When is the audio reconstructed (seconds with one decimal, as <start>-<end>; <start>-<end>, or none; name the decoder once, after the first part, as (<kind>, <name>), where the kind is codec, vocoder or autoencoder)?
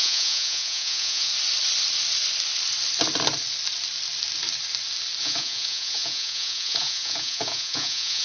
0.0-1.3 (vocoder, Vocos); 5.2-8.2